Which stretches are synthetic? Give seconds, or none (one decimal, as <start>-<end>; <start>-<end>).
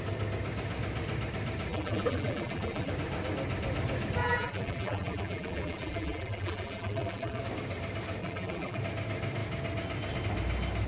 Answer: 1.7-2.9; 4.2-7.4; 8.2-8.8